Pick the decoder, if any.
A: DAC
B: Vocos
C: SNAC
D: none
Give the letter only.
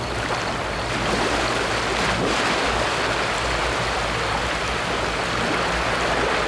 D